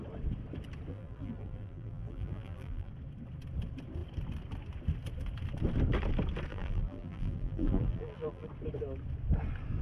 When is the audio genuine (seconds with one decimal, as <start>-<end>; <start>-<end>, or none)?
0.0-0.9; 2.9-6.5; 8.5-9.8